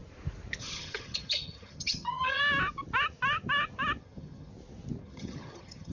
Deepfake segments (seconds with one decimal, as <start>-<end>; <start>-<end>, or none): 0.6-2.4; 4.0-4.5; 5.0-5.9